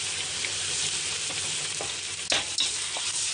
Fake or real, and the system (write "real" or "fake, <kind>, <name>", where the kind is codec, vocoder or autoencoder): real